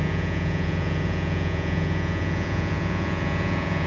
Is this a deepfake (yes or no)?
yes